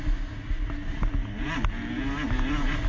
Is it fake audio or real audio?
real